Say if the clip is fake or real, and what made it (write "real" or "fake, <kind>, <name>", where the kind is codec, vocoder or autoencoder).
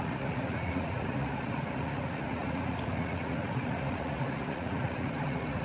fake, vocoder, Vocos